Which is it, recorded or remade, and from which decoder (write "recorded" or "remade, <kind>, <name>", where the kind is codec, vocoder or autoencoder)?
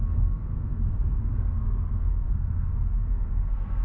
remade, codec, SNAC